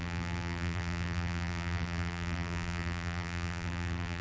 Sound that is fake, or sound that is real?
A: fake